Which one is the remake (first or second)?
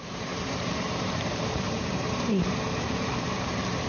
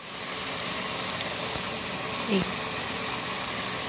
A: first